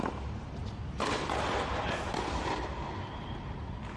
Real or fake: real